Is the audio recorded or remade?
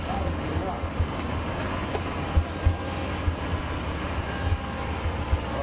recorded